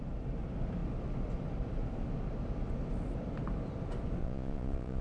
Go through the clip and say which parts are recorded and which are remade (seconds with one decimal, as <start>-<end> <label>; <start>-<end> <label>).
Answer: 0.0-4.2 recorded; 4.2-5.0 remade